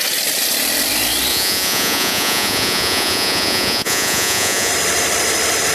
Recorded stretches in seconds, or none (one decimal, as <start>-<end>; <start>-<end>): 0.0-1.3; 4.7-5.7